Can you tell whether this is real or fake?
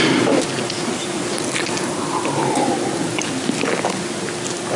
real